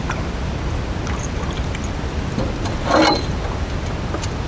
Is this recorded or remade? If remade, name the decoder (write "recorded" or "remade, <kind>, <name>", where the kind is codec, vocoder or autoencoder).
recorded